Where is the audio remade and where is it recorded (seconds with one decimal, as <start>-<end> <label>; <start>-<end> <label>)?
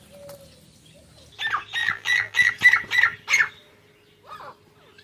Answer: 0.0-1.8 recorded; 1.8-2.5 remade; 2.5-5.0 recorded